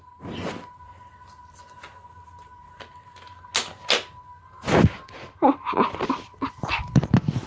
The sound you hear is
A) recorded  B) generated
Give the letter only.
A